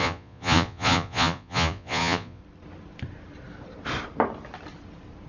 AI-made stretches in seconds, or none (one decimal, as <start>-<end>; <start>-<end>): 0.0-2.4